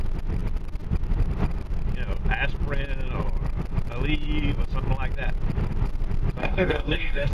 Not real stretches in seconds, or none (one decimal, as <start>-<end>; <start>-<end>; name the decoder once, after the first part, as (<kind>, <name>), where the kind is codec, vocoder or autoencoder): 6.4-7.3 (codec, DAC)